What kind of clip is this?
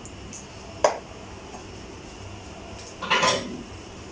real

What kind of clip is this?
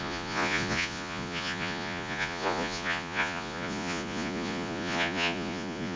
fake